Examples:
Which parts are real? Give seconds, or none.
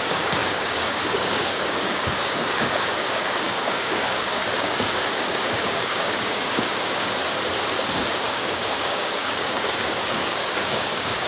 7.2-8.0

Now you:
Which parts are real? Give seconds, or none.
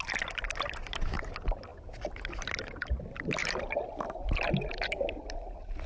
0.0-5.9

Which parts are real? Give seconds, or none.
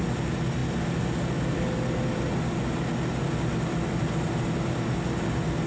0.0-5.7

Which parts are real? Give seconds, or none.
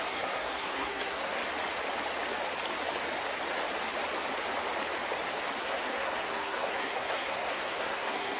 1.4-5.6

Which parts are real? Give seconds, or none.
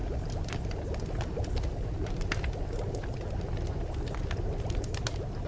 0.0-5.5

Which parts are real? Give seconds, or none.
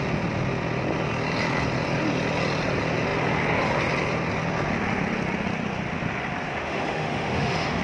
0.0-6.5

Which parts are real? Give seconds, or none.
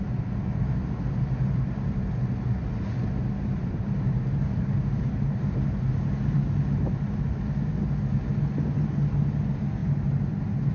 0.0-3.6; 5.4-9.8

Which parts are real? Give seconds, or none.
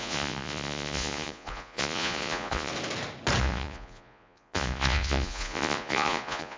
2.7-3.4